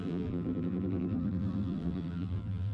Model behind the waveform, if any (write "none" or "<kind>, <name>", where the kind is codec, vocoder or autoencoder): vocoder, BigVGAN v2